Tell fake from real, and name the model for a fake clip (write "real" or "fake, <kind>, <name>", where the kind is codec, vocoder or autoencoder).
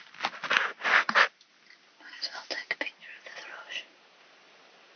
real